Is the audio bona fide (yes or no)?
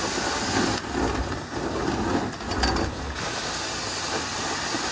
yes